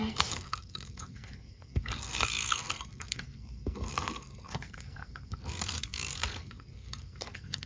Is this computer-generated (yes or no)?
yes